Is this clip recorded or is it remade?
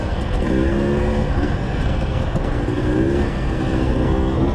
remade